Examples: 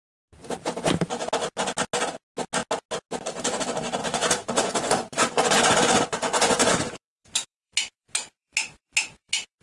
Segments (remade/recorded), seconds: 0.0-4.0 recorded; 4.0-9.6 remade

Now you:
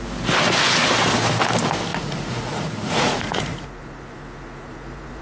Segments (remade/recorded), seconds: 0.0-1.9 recorded; 1.9-5.2 remade

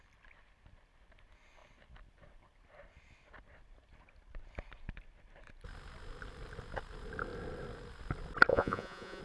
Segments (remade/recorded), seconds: 0.0-8.5 recorded; 8.5-9.2 remade

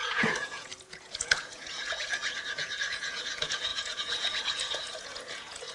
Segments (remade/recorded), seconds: 0.0-5.7 remade

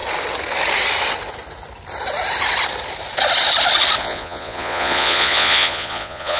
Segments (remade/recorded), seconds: 0.0-4.0 recorded; 4.0-6.4 remade

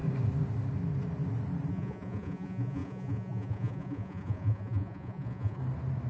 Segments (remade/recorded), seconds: 0.0-1.7 recorded; 1.7-5.6 remade; 5.6-6.1 recorded